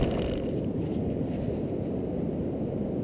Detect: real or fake real